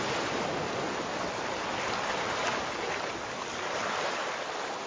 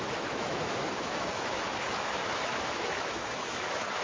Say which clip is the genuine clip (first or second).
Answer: first